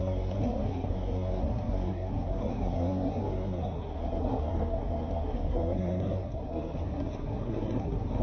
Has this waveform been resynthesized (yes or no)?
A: yes